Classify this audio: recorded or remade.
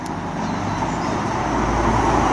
recorded